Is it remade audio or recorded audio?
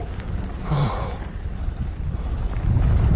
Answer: recorded